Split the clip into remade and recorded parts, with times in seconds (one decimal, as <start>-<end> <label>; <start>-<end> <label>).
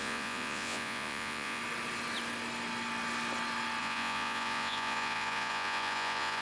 0.0-1.6 remade; 1.6-3.8 recorded; 3.8-6.4 remade